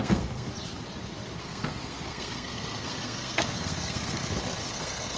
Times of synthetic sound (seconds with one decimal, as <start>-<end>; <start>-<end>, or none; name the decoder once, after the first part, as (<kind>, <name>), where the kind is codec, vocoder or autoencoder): 0.0-0.5 (codec, SNAC); 1.4-4.2; 4.7-5.2